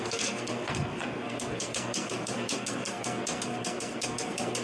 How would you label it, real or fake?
fake